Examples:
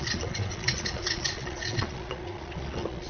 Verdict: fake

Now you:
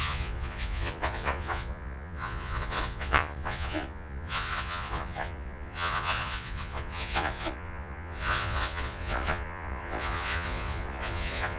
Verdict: fake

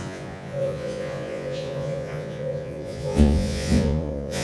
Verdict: fake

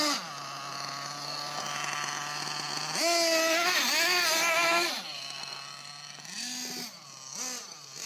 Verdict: real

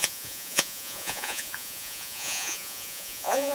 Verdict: fake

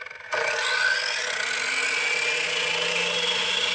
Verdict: real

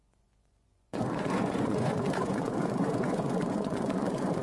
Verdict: fake